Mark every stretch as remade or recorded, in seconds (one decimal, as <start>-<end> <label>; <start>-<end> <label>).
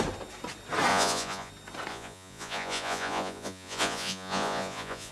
0.0-0.9 recorded; 0.9-1.5 remade; 1.5-1.9 recorded; 1.9-5.1 remade